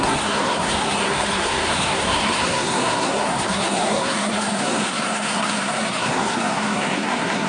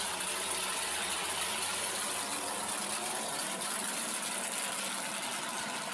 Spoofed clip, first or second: first